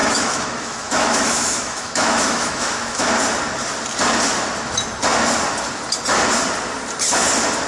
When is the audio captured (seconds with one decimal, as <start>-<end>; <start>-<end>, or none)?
3.1-7.7